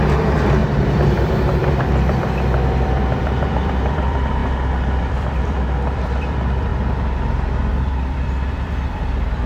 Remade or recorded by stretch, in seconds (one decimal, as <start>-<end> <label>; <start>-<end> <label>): 0.0-4.4 remade; 4.4-5.0 recorded; 5.0-6.7 remade; 6.7-7.7 recorded; 7.7-9.5 remade